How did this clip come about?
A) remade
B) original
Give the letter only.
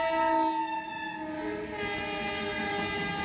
B